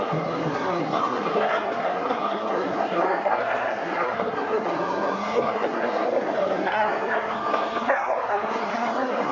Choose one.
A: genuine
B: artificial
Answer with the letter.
B